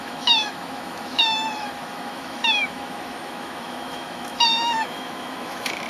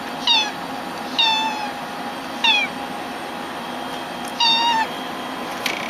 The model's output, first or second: first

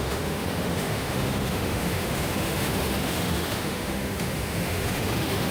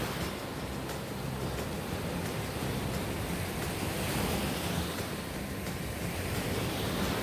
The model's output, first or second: first